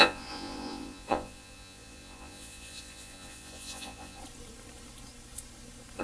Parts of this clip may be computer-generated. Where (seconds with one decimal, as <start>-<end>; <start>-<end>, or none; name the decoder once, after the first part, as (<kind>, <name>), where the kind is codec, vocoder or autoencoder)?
0.0-4.2 (vocoder, Vocos)

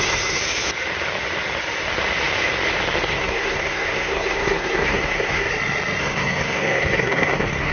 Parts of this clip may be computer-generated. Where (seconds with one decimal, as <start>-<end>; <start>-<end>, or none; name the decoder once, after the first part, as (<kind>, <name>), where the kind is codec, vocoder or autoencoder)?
0.0-0.4 (codec, SNAC); 3.1-5.5; 6.0-7.7